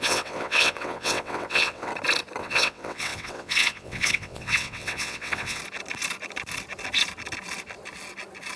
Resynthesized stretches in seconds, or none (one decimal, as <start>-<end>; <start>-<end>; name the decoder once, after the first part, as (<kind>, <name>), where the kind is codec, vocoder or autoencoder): 0.0-1.9 (vocoder, WaveNeXt); 2.4-5.6